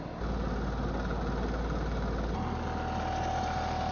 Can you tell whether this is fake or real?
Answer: real